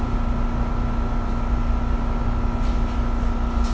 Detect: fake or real real